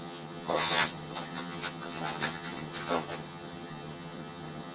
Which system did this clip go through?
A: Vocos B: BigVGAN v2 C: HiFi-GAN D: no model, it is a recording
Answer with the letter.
C